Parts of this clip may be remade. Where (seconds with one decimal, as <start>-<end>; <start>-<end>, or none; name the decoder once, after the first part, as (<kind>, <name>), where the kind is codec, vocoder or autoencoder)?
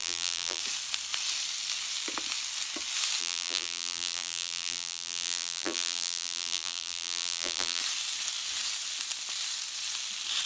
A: 0.0-0.6 (vocoder, BigVGAN v2); 3.2-7.8